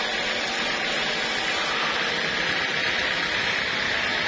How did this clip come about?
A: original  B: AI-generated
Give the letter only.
A